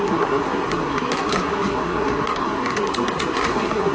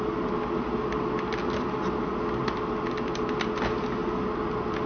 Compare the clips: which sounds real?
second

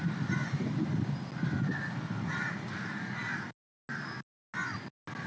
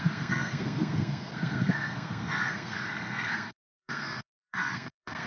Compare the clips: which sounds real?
first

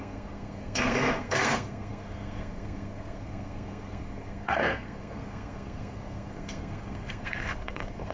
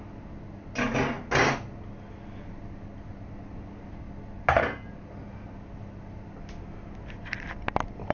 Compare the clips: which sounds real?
second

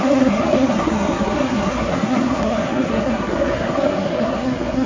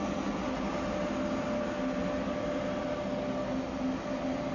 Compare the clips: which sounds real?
second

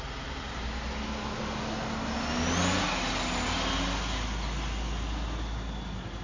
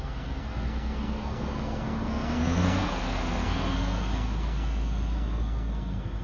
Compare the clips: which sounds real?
first